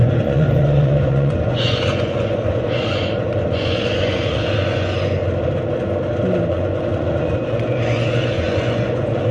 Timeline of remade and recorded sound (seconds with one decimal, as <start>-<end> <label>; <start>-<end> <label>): 0.0-5.2 remade; 5.2-6.5 recorded; 6.5-9.3 remade